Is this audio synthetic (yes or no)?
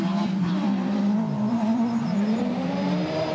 yes